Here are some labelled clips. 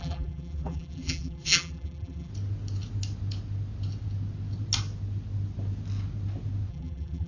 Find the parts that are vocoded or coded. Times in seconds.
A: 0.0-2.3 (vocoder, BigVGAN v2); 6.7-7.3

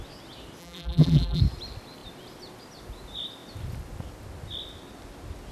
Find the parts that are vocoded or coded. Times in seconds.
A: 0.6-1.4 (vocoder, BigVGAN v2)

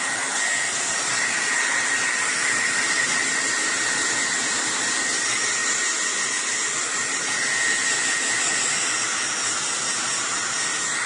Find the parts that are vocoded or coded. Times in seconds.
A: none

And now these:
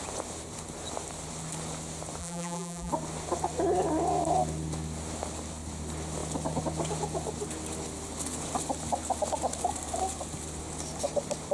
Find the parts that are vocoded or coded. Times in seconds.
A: 2.2-2.9 (vocoder, BigVGAN v2)

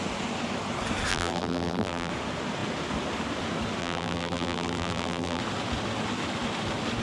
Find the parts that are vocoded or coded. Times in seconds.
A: 1.1-2.1 (vocoder, BigVGAN v2); 3.8-5.4

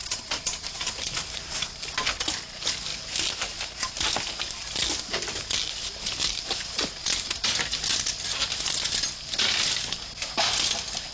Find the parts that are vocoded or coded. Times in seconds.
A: 0.0-1.9 (vocoder, BigVGAN v2)

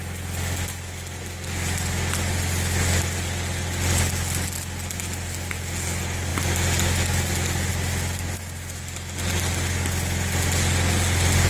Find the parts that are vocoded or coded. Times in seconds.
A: none